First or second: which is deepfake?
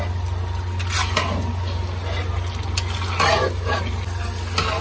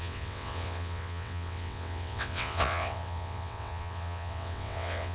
second